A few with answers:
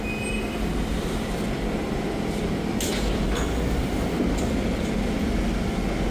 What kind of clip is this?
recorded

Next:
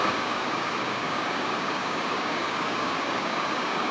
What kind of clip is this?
remade